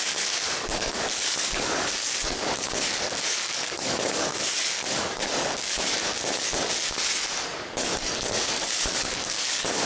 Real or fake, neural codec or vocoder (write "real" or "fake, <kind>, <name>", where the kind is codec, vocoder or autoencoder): fake, codec, DAC